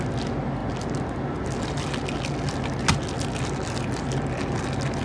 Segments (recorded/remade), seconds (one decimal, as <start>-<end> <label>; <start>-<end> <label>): 0.0-5.0 recorded